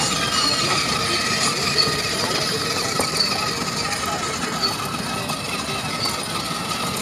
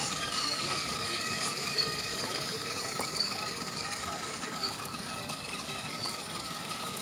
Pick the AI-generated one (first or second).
second